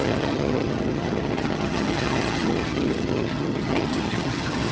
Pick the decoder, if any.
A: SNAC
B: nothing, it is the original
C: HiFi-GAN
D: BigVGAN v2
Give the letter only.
C